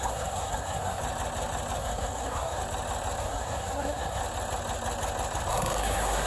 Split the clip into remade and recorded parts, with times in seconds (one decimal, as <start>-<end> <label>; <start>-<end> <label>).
0.0-1.0 remade; 1.0-1.8 recorded; 1.8-2.6 remade; 2.6-3.2 recorded; 3.2-4.2 remade; 4.2-5.5 recorded; 5.5-6.3 remade